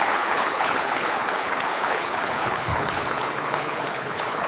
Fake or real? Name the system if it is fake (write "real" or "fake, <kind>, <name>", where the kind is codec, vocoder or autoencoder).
fake, codec, HILCodec